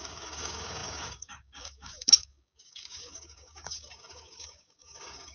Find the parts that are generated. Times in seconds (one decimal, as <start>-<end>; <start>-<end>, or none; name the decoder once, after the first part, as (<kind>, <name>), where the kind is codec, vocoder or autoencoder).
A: 0.0-5.3 (codec, DAC)